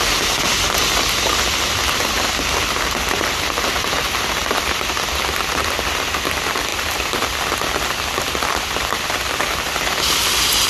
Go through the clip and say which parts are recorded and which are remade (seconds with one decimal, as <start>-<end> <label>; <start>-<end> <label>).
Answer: 0.0-4.4 recorded; 4.4-4.9 remade; 4.9-6.7 recorded; 6.7-10.1 remade; 10.1-10.7 recorded